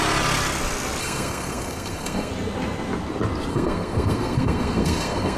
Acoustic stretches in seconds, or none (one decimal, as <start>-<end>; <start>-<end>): 0.0-1.0; 2.3-3.5